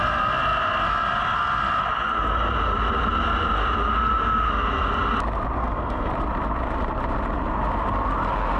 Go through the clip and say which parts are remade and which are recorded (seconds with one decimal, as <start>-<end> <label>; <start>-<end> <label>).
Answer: 0.0-5.6 recorded; 5.6-6.1 remade; 6.1-8.6 recorded